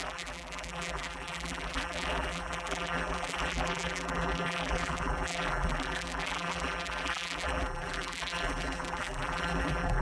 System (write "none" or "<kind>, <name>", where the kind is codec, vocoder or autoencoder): vocoder, BigVGAN v2